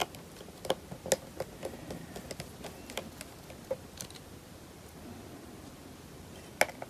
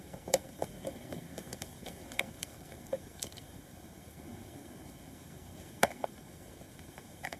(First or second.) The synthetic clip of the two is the second